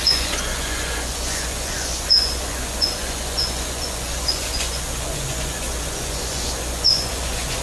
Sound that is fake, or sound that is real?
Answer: fake